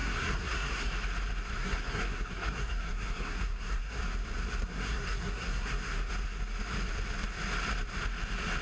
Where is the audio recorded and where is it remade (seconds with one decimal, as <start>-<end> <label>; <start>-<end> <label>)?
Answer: 0.0-0.9 remade; 0.9-1.6 recorded; 1.6-4.0 remade; 4.0-4.6 recorded; 4.6-6.1 remade; 6.1-8.6 recorded